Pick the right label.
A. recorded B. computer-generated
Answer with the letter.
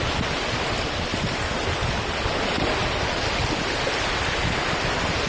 A